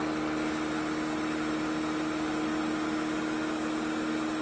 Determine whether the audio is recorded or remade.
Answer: recorded